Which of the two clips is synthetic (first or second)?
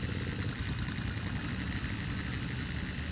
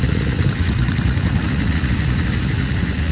second